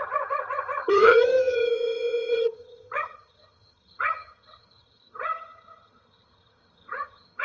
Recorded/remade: remade